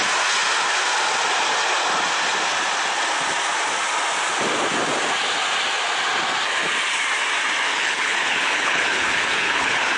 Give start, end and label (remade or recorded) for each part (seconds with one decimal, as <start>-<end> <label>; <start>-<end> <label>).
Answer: 0.0-7.7 recorded; 7.7-10.0 remade